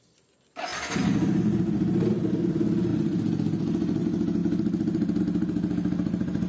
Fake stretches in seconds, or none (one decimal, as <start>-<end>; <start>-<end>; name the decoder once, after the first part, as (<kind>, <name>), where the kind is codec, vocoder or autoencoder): none